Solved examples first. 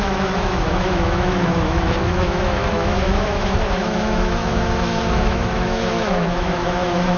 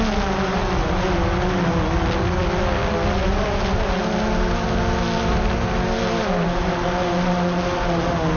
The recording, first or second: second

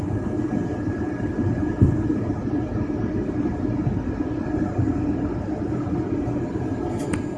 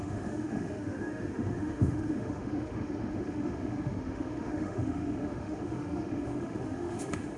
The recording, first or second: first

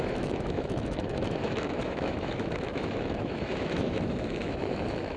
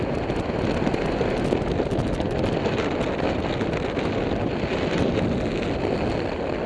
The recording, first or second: second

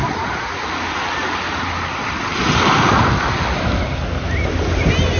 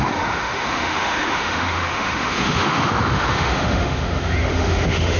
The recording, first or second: first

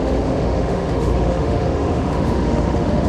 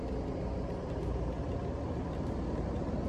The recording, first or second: second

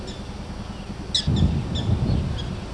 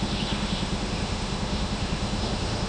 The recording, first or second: first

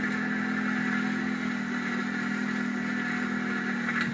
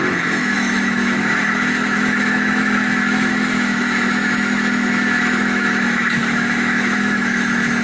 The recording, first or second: first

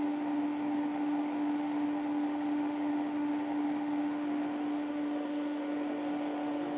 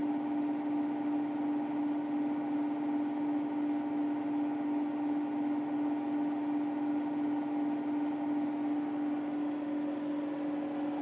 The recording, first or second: second